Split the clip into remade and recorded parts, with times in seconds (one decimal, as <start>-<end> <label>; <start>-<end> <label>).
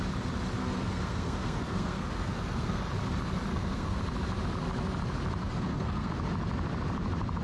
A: 0.0-0.6 recorded; 0.6-2.9 remade; 2.9-3.5 recorded; 3.5-4.0 remade; 4.0-5.4 recorded; 5.4-6.1 remade; 6.1-7.4 recorded